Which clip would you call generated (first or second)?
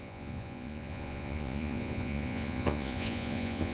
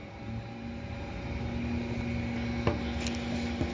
first